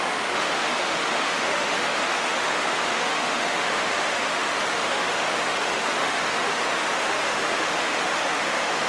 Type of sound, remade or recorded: remade